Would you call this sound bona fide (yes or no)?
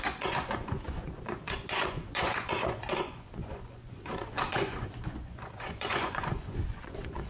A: no